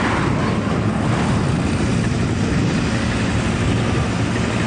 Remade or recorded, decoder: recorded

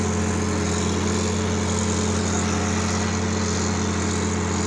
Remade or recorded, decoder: recorded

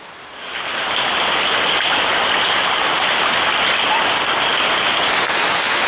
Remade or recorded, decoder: recorded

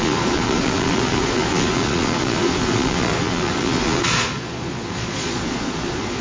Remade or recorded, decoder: remade, vocoder, Vocos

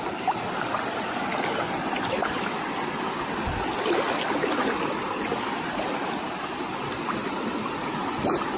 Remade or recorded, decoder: recorded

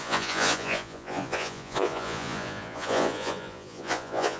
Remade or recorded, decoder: remade, vocoder, Vocos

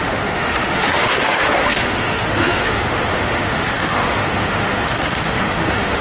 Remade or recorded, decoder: remade, autoencoder, DAC-VAE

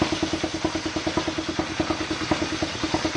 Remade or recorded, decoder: recorded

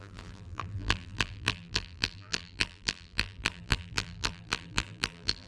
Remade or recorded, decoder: remade, vocoder, BigVGAN v2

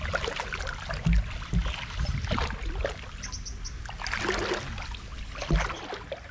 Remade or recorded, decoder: recorded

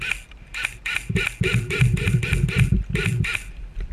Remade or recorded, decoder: recorded